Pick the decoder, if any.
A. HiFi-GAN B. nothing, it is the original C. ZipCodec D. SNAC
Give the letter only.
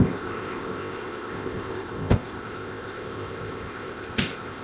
C